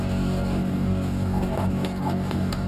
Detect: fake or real fake